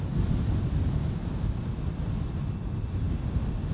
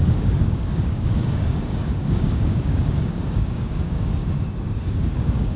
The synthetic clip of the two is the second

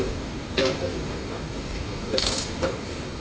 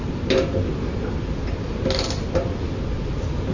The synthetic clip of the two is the first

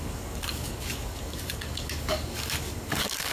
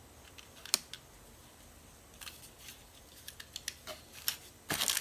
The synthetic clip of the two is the first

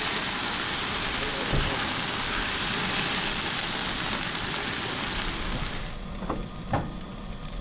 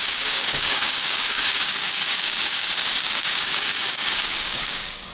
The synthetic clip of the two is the second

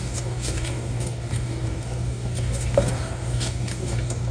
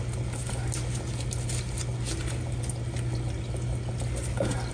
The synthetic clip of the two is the first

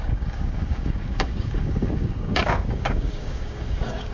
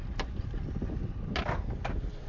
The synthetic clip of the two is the first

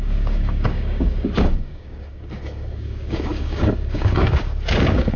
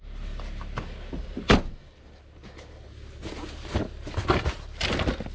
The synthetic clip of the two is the first